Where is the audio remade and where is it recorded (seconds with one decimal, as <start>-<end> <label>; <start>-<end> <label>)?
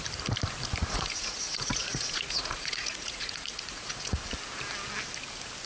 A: 0.0-0.8 recorded; 0.8-4.2 remade; 4.2-5.7 recorded